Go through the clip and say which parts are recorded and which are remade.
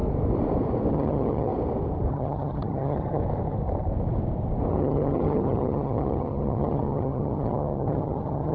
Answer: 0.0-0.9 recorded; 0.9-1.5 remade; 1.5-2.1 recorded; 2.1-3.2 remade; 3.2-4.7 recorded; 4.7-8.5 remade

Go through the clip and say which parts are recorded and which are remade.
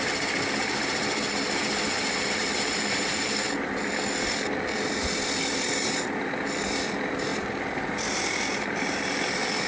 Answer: 0.0-9.7 recorded